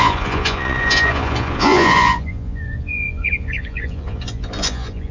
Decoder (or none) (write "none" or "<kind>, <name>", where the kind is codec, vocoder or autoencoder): vocoder, Vocos